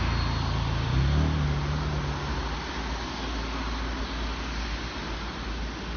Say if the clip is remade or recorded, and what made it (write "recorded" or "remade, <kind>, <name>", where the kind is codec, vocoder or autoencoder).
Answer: recorded